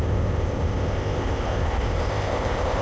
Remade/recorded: remade